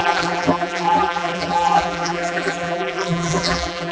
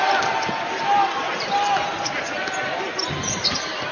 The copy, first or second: first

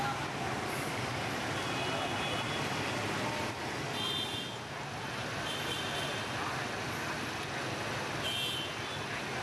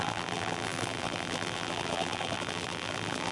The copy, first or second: second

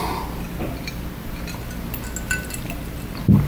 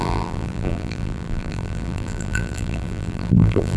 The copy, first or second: second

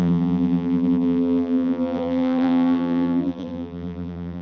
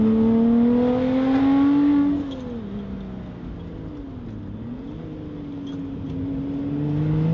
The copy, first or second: first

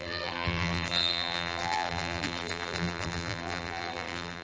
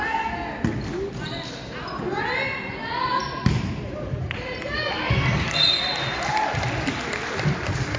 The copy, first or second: first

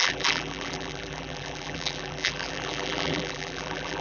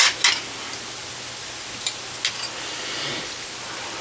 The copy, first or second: first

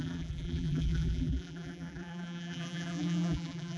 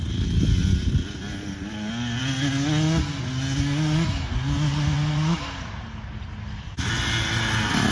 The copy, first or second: first